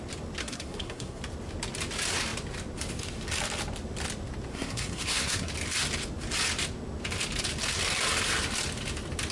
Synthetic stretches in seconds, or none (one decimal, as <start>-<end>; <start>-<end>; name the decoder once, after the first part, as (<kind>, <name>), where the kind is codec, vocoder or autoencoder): 0.4-1.2 (codec, SNAC); 4.5-5.5